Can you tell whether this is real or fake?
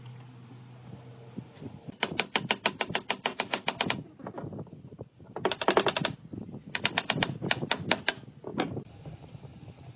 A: real